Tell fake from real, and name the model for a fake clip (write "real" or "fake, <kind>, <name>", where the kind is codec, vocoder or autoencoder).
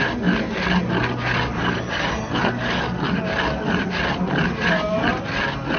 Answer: real